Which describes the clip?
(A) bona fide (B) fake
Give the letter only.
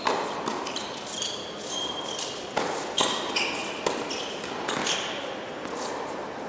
A